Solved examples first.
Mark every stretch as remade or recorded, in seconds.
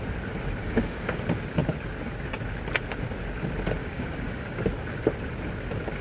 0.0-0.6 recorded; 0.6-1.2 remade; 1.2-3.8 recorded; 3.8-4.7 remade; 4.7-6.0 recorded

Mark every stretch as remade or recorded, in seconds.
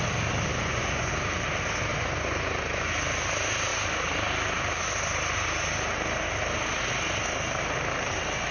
0.0-0.5 recorded; 0.5-1.1 remade; 1.1-1.9 recorded; 1.9-2.9 remade; 2.9-8.5 recorded